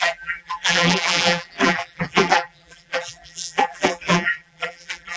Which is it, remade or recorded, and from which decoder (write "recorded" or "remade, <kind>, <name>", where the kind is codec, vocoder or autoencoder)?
remade, vocoder, BigVGAN v2